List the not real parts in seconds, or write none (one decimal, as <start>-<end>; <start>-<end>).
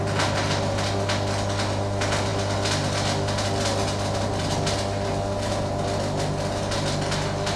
none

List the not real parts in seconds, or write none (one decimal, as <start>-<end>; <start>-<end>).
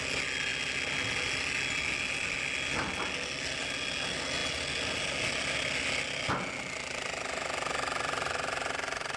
none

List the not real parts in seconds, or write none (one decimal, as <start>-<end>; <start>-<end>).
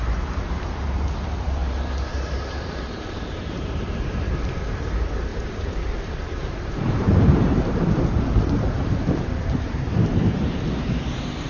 0.0-1.6; 2.1-11.5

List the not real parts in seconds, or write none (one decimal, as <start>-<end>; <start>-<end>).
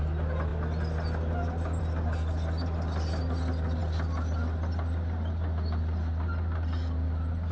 none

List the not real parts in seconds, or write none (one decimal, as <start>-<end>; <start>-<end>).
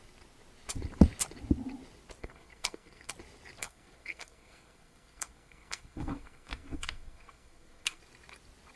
2.2-3.1; 3.6-8.0